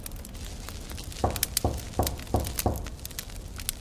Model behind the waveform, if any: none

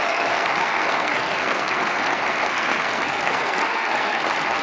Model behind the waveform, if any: codec, SNAC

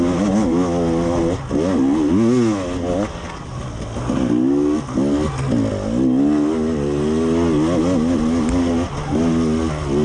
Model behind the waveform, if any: none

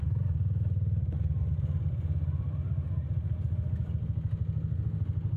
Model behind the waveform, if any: none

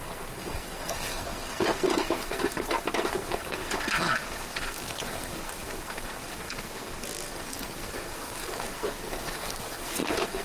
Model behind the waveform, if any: codec, SNAC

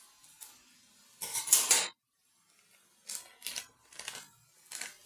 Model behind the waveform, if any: none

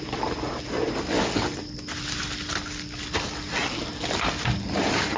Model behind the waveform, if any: none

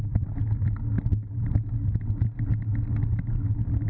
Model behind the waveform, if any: none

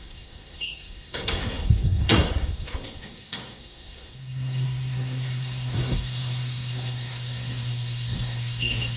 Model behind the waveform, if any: codec, SNAC